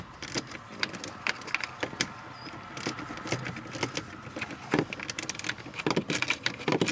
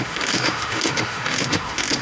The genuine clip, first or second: first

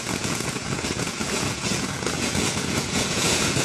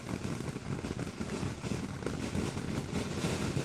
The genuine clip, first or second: second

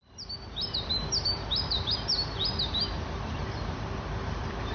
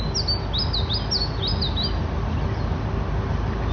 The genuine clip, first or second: second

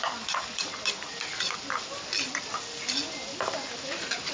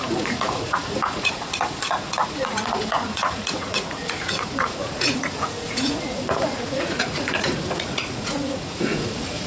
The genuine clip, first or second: first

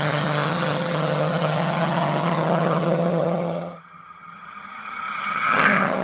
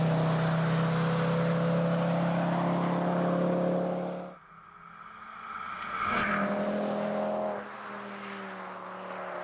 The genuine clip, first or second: second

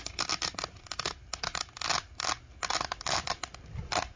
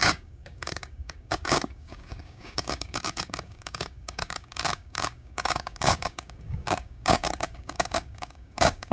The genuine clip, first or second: first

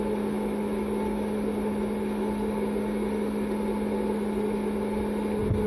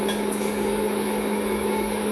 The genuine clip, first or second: first